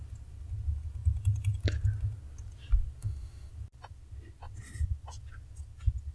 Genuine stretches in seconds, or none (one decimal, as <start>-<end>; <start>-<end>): 0.0-3.0; 3.5-6.1